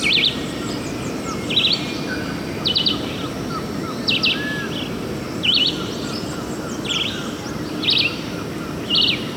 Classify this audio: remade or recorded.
recorded